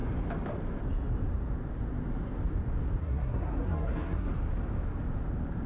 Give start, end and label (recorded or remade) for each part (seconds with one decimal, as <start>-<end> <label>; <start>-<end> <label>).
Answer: 0.0-3.0 recorded; 3.0-4.3 remade; 4.3-5.7 recorded